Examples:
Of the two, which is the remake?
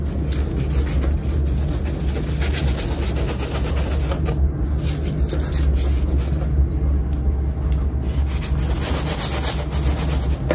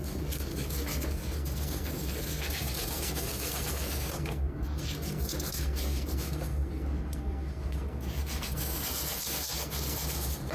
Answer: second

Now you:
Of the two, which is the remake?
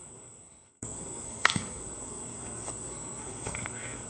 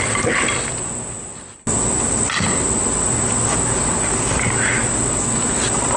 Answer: first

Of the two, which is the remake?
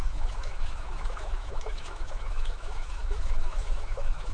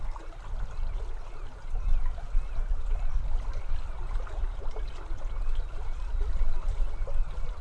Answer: first